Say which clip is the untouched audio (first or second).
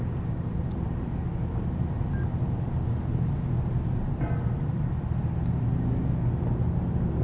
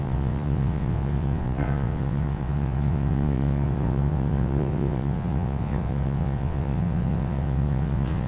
first